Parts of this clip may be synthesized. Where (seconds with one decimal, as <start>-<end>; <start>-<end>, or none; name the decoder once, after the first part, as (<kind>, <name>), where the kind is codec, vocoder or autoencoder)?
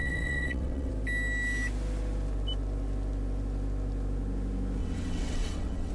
0.0-0.9 (vocoder, WaveNeXt); 4.8-5.9